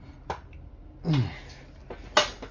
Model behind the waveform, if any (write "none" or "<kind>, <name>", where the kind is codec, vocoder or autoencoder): none